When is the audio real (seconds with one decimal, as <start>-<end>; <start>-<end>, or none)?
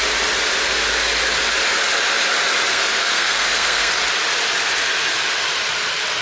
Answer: 0.0-2.7; 3.9-6.2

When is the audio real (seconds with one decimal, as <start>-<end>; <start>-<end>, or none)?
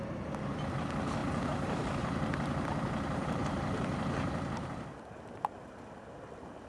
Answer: 0.0-1.2; 5.2-6.7